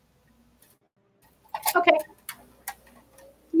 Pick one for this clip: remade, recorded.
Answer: recorded